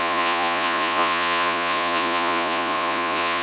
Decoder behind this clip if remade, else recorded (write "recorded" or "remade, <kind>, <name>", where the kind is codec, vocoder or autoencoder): remade, vocoder, Vocos